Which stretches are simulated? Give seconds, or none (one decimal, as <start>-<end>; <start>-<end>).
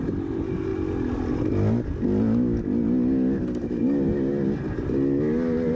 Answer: none